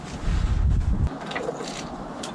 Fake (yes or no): no